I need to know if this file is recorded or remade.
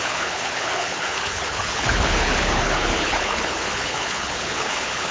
remade